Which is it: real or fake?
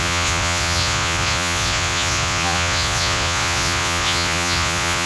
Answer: fake